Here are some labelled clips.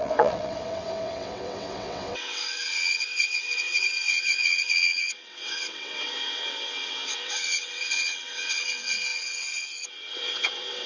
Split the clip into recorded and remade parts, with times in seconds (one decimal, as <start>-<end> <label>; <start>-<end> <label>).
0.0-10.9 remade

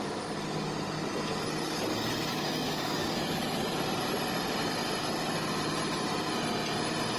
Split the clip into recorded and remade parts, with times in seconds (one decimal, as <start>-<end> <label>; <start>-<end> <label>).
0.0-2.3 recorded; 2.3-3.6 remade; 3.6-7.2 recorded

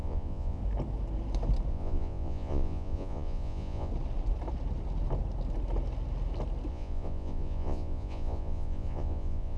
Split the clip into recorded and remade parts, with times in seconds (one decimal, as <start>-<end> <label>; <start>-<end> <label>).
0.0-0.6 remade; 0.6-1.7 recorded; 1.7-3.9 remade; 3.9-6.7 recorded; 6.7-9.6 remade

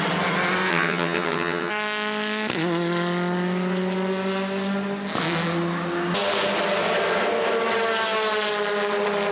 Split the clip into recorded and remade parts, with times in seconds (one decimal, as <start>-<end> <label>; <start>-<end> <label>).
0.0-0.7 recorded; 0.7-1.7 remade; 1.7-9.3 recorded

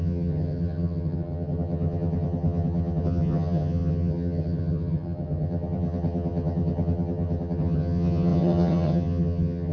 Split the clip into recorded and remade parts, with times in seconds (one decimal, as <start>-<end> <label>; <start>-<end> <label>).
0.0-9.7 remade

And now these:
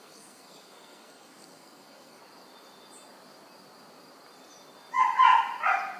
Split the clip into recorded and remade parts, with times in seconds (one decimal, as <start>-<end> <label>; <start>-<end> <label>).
0.0-2.2 remade; 2.2-6.0 recorded